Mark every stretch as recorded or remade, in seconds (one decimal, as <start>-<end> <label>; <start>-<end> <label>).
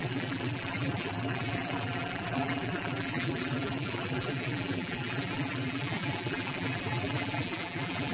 0.0-8.1 remade